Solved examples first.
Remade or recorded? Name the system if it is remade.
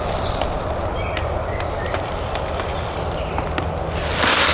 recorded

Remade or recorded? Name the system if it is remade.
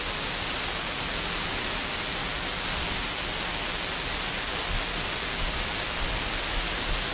recorded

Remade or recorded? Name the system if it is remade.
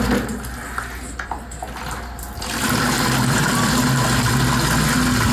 recorded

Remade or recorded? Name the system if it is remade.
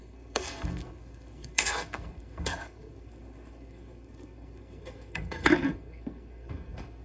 remade, codec, SNAC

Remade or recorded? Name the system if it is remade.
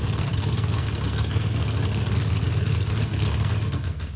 remade, codec, SNAC